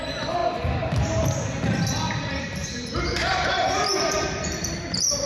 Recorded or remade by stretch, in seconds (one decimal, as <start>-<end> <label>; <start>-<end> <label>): 0.0-0.4 remade; 0.4-2.4 recorded; 2.4-2.8 remade; 2.8-3.3 recorded; 3.3-5.3 remade